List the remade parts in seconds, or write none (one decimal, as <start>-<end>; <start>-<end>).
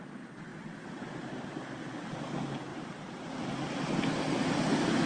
0.5-2.2; 2.7-3.3